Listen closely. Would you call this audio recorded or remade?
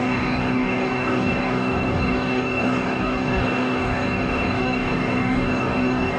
remade